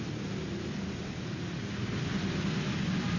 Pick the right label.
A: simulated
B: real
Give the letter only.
B